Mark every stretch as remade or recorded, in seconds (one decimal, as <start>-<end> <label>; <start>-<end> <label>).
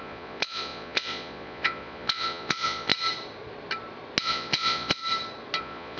0.0-2.9 remade; 2.9-4.2 recorded; 4.2-5.0 remade; 5.0-5.6 recorded; 5.6-6.0 remade